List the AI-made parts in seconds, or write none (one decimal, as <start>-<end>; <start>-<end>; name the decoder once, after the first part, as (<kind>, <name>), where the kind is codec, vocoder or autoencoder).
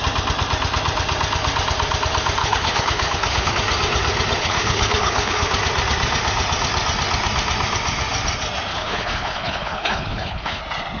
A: 2.4-3.5 (codec, HILCodec); 4.4-5.5; 8.7-10.6